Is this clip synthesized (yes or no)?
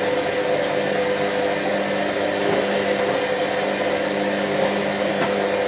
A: no